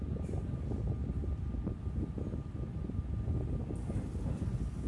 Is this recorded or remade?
recorded